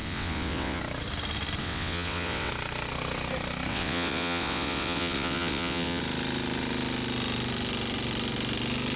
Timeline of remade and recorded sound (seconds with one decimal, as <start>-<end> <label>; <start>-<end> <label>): 0.0-0.8 remade; 0.8-1.6 recorded; 1.6-2.5 remade; 2.5-3.7 recorded; 3.7-6.0 remade; 6.0-9.0 recorded